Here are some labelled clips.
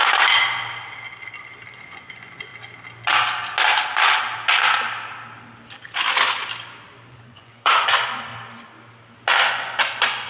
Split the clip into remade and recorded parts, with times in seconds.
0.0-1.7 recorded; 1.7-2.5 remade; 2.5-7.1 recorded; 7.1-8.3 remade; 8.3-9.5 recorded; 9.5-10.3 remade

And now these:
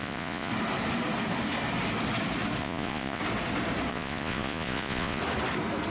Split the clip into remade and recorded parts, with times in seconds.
0.0-0.5 remade; 0.5-2.6 recorded; 2.6-3.2 remade; 3.2-3.9 recorded; 3.9-5.2 remade; 5.2-5.9 recorded

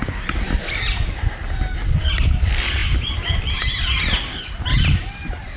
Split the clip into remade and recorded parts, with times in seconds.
0.0-5.6 recorded